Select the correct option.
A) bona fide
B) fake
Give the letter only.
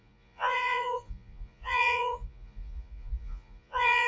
B